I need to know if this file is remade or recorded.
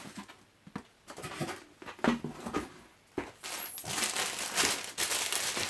recorded